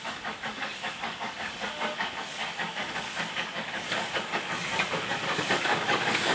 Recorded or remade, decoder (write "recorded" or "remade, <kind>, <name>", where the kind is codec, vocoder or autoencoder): remade, codec, DAC